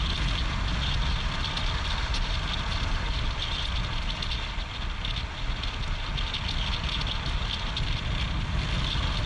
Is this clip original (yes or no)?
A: yes